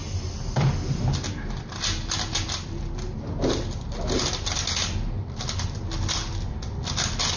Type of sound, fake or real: real